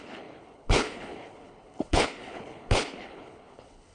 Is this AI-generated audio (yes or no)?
yes